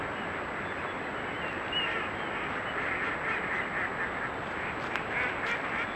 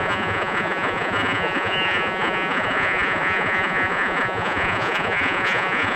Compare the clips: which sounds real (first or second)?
first